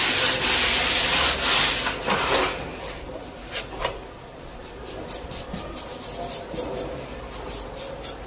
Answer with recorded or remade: recorded